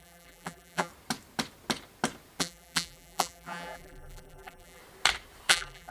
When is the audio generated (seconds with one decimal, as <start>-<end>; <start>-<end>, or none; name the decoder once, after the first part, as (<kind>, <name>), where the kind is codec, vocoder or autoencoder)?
0.0-0.9 (vocoder, BigVGAN v2); 2.4-4.8; 5.5-5.9